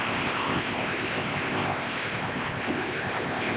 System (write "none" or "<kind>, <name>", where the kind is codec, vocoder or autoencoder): codec, ZipCodec